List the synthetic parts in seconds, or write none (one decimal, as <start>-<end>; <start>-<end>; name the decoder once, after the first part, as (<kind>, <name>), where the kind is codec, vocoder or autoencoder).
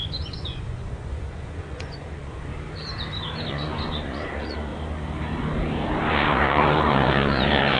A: 0.0-2.5 (vocoder, Vocos); 3.5-4.7; 6.1-7.8